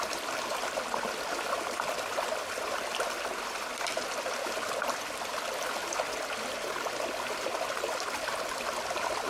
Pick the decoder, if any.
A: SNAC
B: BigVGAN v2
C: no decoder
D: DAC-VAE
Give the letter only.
B